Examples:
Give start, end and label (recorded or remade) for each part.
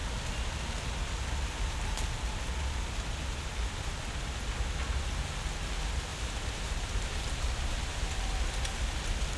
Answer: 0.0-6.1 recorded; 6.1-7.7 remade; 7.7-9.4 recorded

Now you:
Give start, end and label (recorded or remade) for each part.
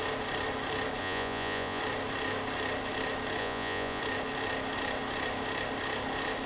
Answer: 0.0-1.0 recorded; 1.0-1.8 remade; 1.8-3.4 recorded; 3.4-4.0 remade; 4.0-6.5 recorded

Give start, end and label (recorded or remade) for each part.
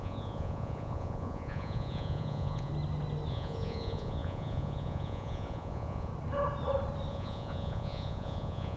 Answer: 0.0-2.7 remade; 2.7-3.3 recorded; 3.3-6.1 remade; 6.1-7.1 recorded; 7.1-8.8 remade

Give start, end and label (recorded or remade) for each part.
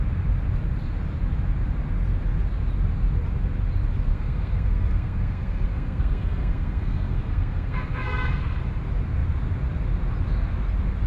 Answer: 0.0-4.1 recorded; 4.1-8.6 remade; 8.6-11.1 recorded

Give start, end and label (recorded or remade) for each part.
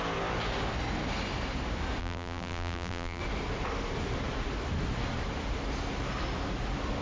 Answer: 0.0-2.0 recorded; 2.0-3.2 remade; 3.2-7.0 recorded